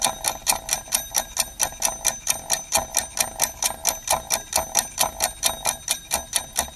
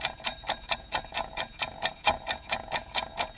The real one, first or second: first